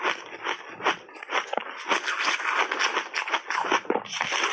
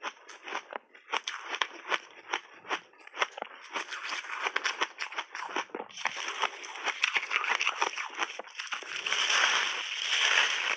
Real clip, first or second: first